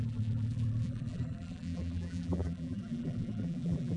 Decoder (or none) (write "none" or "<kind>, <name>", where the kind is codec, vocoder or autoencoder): vocoder, BigVGAN v2